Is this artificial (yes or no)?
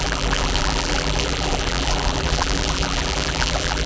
yes